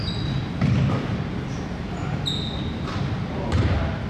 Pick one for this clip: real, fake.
real